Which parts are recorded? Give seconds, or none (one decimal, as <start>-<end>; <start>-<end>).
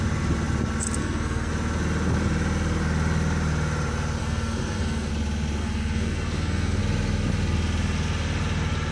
0.0-1.0; 1.5-4.2; 5.1-5.6; 6.8-8.9